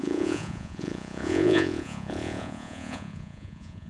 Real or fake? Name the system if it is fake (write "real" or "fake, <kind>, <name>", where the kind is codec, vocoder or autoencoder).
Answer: fake, vocoder, Vocos